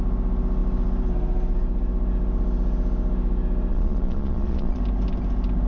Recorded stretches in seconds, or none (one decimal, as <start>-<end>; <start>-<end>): 0.0-3.7; 4.8-5.7